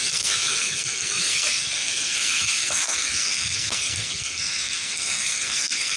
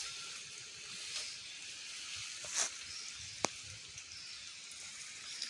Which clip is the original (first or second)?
second